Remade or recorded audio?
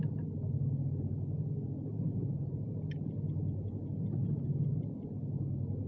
recorded